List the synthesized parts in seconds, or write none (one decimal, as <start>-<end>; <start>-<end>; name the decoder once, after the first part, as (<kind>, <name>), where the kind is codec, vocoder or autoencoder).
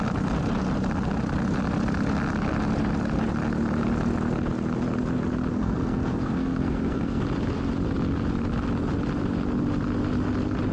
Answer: 5.5-7.2 (codec, SNAC)